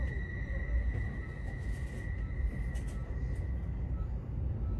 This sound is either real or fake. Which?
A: real